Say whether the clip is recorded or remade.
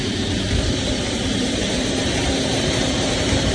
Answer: remade